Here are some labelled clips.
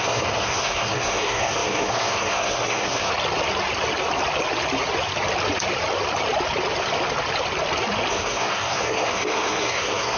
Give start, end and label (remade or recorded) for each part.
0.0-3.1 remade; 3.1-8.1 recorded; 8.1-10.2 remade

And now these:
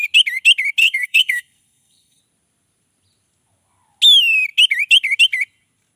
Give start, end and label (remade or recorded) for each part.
0.0-0.8 recorded; 0.8-2.2 remade; 2.2-6.0 recorded

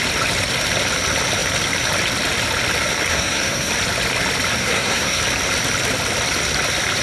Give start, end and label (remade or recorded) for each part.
0.0-3.1 recorded; 3.1-3.7 remade; 3.7-4.6 recorded; 4.6-5.2 remade; 5.2-7.0 recorded